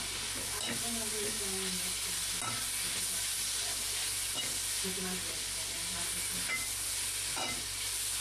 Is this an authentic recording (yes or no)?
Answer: yes